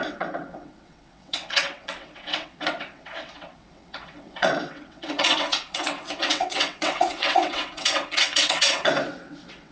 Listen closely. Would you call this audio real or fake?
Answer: fake